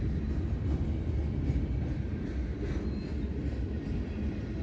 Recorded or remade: recorded